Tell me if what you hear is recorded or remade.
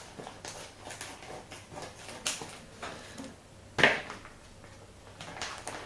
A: recorded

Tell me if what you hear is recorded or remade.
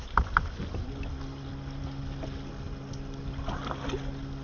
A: recorded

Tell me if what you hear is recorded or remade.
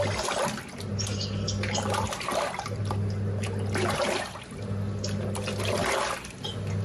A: recorded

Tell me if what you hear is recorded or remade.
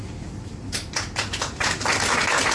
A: recorded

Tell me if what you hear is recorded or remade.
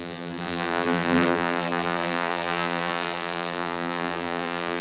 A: remade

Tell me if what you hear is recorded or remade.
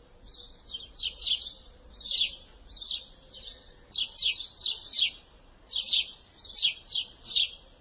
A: remade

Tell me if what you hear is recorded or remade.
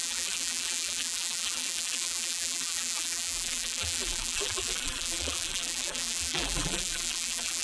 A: remade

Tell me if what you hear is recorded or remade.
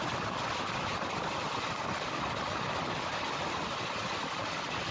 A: recorded